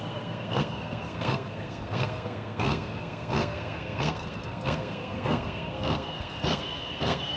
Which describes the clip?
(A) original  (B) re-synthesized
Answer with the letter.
B